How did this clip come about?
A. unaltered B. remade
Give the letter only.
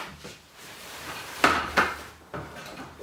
B